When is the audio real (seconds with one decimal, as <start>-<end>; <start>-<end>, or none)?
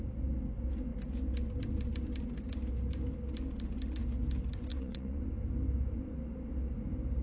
0.0-4.7; 5.2-7.2